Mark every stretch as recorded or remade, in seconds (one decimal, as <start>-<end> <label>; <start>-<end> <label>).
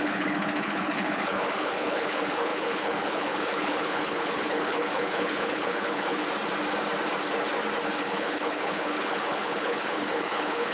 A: 0.0-6.2 remade; 6.2-8.0 recorded; 8.0-10.7 remade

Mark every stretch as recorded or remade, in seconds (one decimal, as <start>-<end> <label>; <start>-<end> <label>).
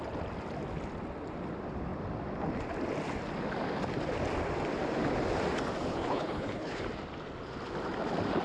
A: 0.0-5.9 recorded; 5.9-6.8 remade; 6.8-8.4 recorded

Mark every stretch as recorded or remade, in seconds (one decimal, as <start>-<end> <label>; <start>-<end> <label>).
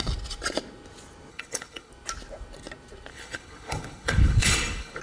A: 0.0-1.3 recorded; 1.3-1.9 remade; 1.9-3.1 recorded; 3.1-5.0 remade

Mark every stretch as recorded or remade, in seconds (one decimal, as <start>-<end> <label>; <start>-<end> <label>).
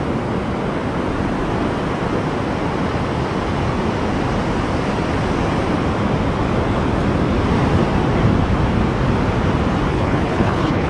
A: 0.0-9.9 recorded; 9.9-10.9 remade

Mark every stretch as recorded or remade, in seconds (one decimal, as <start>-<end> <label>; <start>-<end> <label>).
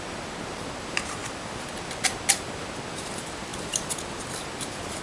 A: 0.0-5.0 recorded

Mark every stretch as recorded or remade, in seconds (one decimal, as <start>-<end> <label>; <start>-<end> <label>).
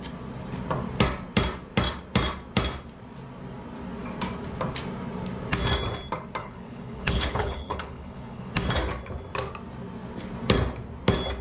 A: 0.0-6.4 recorded; 6.4-8.5 remade; 8.5-11.4 recorded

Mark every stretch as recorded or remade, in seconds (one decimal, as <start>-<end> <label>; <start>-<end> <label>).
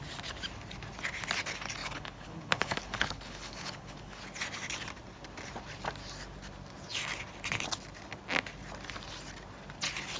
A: 0.0-1.8 recorded; 1.8-4.2 remade; 4.2-10.2 recorded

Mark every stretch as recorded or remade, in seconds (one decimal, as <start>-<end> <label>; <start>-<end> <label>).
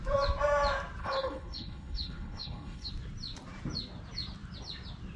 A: 0.0-1.0 recorded; 1.0-2.9 remade; 2.9-5.2 recorded